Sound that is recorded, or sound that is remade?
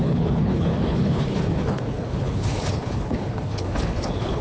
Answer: remade